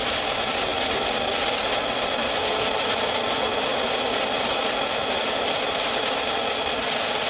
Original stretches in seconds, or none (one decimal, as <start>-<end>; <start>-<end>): 0.0-0.7; 1.7-7.3